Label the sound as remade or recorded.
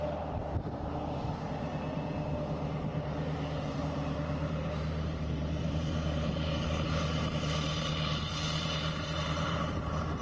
remade